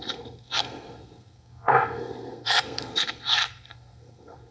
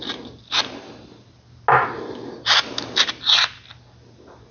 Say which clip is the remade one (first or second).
first